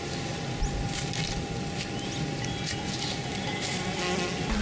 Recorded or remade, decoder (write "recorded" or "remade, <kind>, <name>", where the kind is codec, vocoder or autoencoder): recorded